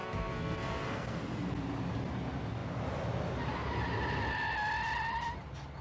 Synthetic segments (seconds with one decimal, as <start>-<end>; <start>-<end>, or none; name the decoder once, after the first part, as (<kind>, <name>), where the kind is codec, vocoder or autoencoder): 0.0-1.2 (codec, SNAC)